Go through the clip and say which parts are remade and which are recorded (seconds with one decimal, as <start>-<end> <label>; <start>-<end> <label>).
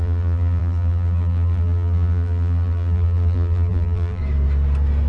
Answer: 0.0-4.2 remade; 4.2-5.1 recorded